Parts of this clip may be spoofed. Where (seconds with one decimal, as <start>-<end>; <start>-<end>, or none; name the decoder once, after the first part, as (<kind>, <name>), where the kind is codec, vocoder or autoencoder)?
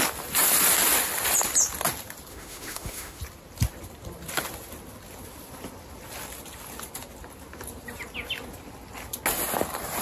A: 2.3-3.2 (autoencoder, DAC-VAE)